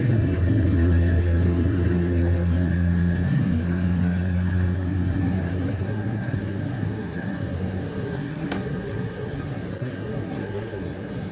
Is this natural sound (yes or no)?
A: no